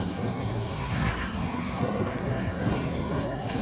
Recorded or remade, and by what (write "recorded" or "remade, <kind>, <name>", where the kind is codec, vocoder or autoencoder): remade, codec, SNAC